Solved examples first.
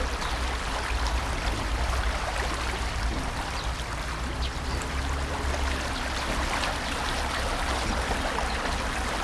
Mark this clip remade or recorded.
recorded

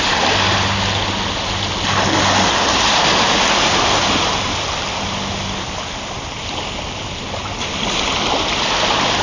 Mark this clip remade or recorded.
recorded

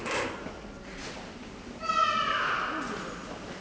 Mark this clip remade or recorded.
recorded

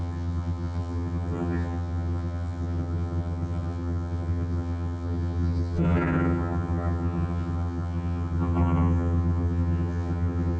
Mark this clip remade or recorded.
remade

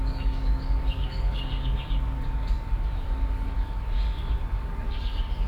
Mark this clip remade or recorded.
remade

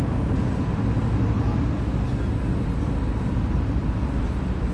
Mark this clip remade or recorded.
recorded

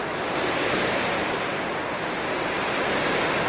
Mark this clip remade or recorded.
recorded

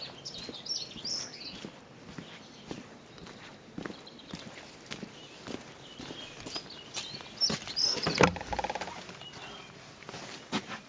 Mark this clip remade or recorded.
recorded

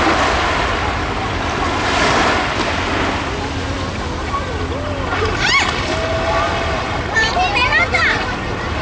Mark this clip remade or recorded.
recorded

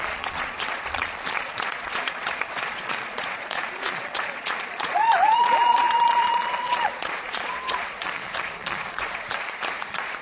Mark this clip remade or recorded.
remade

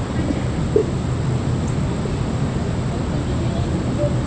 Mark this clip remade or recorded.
recorded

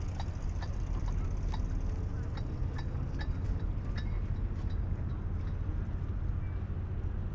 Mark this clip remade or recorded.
recorded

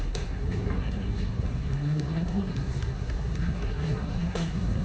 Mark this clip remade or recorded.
remade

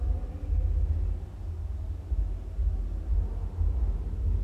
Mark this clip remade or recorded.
recorded